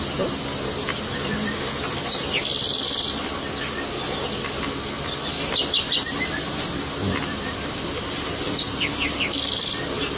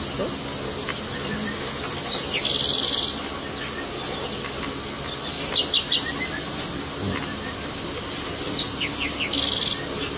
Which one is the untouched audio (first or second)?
second